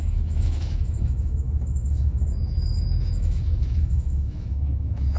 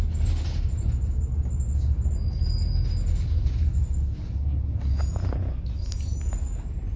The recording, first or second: second